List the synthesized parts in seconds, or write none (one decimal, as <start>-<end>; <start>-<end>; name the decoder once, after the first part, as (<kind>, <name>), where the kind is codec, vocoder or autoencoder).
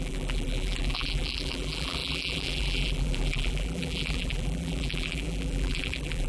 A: 0.0-6.3 (vocoder, BigVGAN v2)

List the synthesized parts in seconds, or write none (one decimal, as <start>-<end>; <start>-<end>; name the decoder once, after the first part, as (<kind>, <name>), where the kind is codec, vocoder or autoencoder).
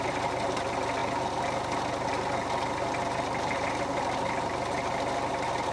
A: none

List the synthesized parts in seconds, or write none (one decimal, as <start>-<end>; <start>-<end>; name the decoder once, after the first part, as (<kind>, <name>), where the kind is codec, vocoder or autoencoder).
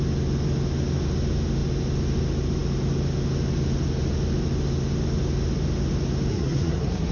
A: 6.3-7.1 (codec, SNAC)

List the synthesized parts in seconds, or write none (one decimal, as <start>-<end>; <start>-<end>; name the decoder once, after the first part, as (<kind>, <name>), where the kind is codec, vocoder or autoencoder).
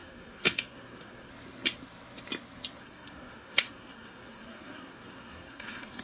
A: 0.0-1.3 (codec, SNAC); 2.8-6.0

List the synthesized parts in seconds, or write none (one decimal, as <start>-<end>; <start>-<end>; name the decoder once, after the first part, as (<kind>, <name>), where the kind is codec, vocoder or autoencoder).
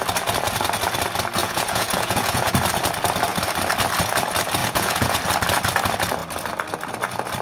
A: 1.4-2.5 (vocoder, Vocos); 4.6-5.2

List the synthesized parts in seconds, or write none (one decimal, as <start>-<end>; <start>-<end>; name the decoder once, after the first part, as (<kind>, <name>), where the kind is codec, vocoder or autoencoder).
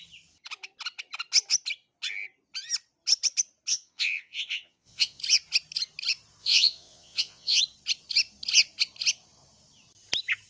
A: 3.7-5.2 (vocoder, Vocos); 6.4-7.6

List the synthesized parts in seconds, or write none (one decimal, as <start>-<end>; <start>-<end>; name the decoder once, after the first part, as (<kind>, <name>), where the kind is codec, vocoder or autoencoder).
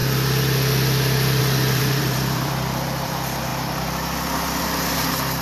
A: 1.4-5.4 (vocoder, BigVGAN v2)